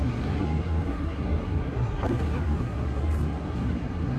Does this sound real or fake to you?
fake